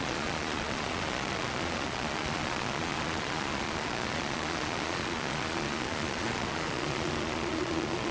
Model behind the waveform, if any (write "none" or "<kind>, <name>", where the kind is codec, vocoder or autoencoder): vocoder, Vocos